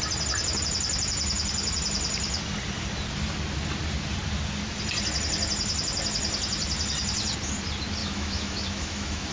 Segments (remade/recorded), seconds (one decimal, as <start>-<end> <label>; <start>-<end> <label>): 0.0-8.0 recorded; 8.0-9.3 remade

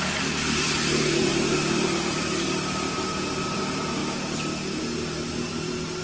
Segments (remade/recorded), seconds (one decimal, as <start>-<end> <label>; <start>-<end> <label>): 0.0-1.3 recorded; 1.3-3.6 remade; 3.6-4.0 recorded; 4.0-4.8 remade; 4.8-6.0 recorded